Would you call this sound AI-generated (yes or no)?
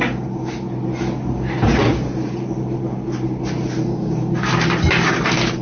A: no